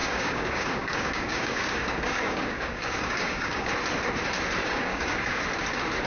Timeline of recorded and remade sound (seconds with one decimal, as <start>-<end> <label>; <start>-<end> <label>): 0.0-3.7 remade; 3.7-4.6 recorded; 4.6-5.4 remade; 5.4-6.1 recorded